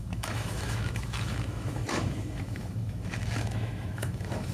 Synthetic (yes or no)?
yes